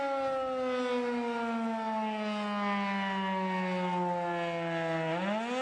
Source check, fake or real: real